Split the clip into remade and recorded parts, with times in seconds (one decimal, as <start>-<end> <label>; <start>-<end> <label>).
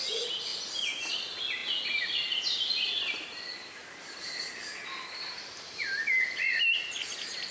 0.0-7.5 recorded